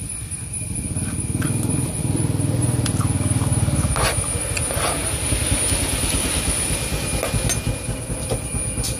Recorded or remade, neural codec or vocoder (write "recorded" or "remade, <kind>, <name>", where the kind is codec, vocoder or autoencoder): recorded